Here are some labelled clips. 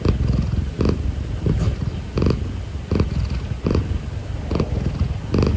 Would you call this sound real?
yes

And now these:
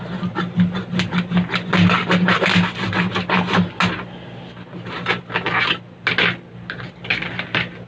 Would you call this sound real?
yes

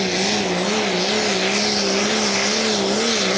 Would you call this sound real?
yes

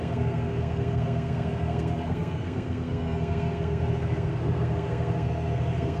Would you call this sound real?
no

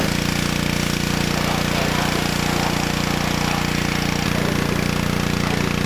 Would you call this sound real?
yes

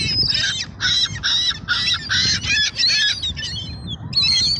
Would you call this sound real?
yes